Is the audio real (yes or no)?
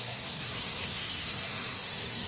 no